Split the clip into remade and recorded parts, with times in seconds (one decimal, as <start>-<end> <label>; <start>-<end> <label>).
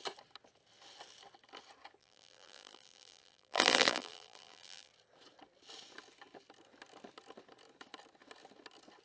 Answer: 0.0-2.0 recorded; 2.0-4.9 remade; 4.9-9.0 recorded